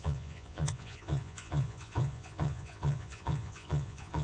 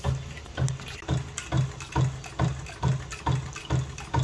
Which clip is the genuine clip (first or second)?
second